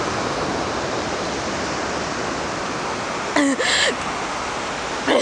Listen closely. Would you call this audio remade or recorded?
recorded